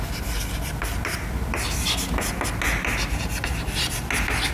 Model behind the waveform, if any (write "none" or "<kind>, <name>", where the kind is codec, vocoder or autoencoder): none